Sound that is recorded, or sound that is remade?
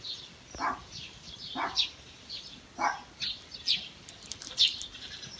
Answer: remade